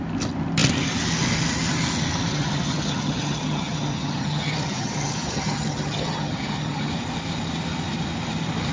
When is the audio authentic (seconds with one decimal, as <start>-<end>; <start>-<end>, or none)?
0.0-2.3; 6.9-8.7

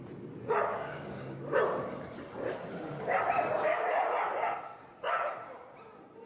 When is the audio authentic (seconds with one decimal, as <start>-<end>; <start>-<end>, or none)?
0.0-0.7; 1.6-6.3

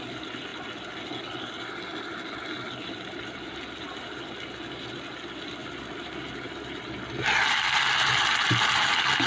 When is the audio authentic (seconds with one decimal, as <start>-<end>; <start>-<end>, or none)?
0.0-9.3

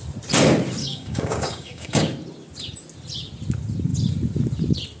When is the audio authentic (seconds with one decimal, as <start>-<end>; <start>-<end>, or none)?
0.0-0.8; 2.1-5.0

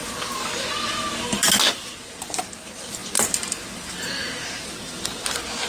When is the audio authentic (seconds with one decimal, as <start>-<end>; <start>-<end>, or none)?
0.0-5.7

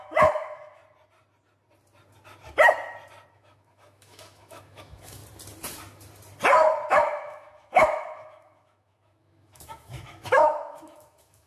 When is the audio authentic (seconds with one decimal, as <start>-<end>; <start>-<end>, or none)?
0.8-3.3; 5.2-6.9

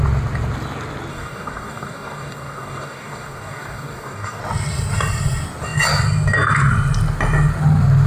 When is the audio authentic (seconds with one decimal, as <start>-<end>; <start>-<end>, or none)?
0.0-1.1; 4.4-8.1

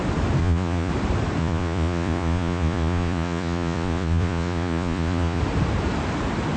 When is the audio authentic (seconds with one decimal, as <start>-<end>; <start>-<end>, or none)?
0.0-0.4; 0.9-1.4; 5.4-6.6